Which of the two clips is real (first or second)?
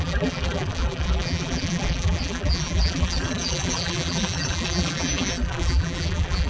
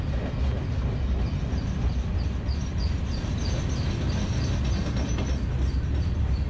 second